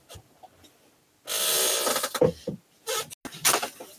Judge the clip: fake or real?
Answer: real